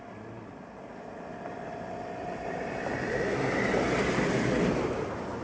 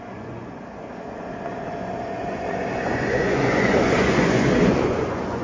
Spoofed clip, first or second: second